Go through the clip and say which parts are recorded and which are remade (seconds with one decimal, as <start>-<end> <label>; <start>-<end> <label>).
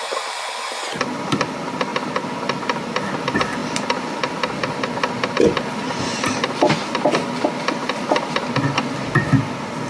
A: 0.0-3.6 recorded; 3.6-6.6 remade; 6.6-7.8 recorded; 7.8-9.1 remade; 9.1-9.9 recorded